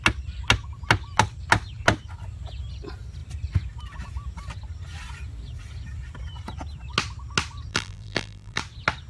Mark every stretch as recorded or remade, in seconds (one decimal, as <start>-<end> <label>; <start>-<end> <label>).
0.0-7.7 recorded; 7.7-8.6 remade; 8.6-9.1 recorded